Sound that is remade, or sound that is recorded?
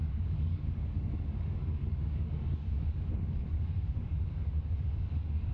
remade